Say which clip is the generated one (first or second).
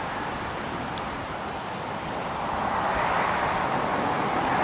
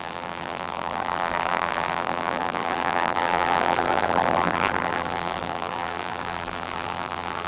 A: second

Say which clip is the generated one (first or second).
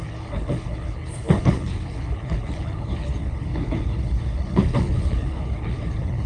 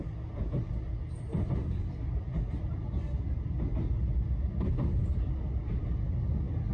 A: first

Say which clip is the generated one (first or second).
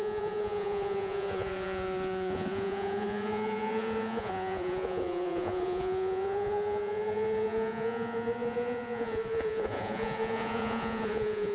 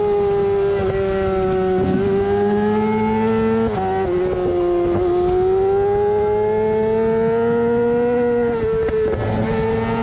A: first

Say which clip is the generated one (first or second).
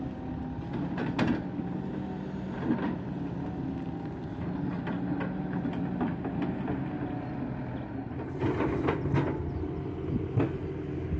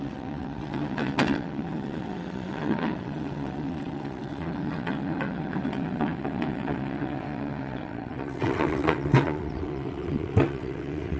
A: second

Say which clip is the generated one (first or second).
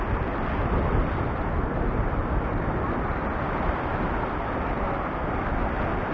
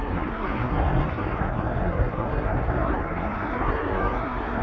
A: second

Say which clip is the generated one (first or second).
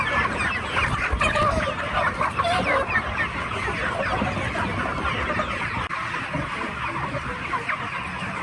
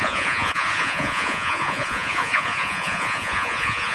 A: second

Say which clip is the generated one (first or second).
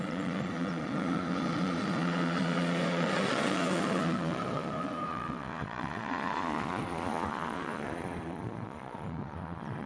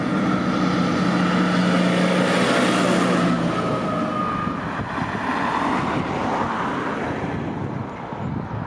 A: first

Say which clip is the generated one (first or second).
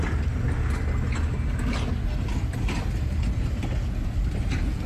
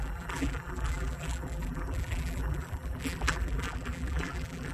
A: second